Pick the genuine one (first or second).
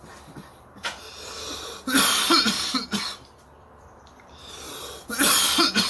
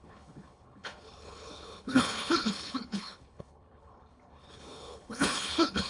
first